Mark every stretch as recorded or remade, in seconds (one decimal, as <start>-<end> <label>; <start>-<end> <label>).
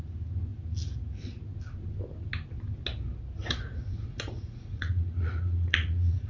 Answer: 0.0-3.4 recorded; 3.4-6.3 remade